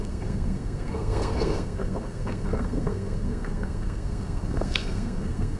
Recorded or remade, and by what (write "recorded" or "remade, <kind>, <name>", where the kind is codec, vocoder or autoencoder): remade, codec, SNAC